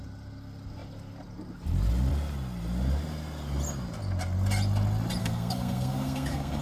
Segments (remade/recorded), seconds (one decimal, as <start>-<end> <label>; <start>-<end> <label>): 0.0-5.2 recorded; 5.2-6.6 remade